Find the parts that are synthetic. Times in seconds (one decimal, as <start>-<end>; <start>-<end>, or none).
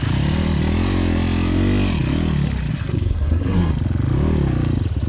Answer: 2.7-3.7